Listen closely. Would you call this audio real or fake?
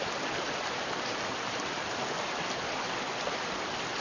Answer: real